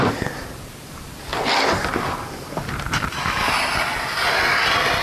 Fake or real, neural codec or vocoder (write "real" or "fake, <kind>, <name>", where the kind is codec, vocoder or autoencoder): real